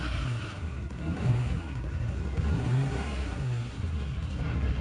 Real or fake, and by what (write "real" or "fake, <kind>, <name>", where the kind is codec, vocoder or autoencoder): fake, codec, SNAC